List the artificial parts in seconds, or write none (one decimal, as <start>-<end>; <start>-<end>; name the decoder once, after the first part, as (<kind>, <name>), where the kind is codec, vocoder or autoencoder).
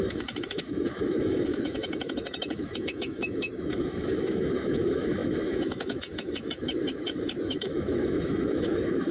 0.0-9.1 (autoencoder, DAC-VAE)